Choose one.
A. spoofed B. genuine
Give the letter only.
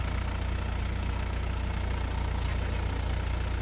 B